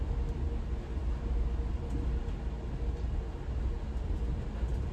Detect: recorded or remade recorded